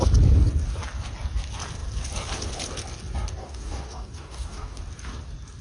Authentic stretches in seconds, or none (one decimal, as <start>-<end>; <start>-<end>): 0.0-3.4; 4.8-5.6